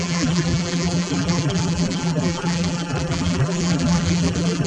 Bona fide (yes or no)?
no